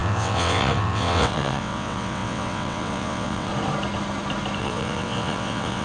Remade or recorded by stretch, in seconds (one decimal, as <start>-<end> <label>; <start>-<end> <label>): 0.0-3.5 remade; 3.5-4.6 recorded; 4.6-5.8 remade